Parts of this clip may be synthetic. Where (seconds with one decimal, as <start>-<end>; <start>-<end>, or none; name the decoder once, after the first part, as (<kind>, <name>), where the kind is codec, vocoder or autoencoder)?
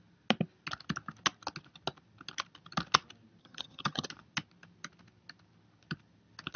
3.4-4.1 (vocoder, HiFi-GAN)